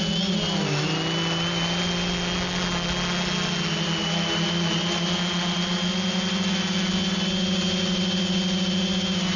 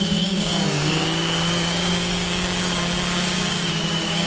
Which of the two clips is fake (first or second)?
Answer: second